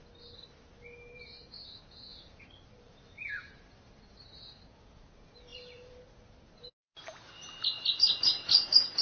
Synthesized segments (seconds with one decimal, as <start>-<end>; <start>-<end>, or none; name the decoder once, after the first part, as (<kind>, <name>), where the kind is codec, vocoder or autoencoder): 2.1-3.6 (vocoder, BigVGAN v2); 5.5-6.0